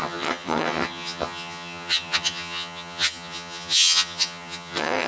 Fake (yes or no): yes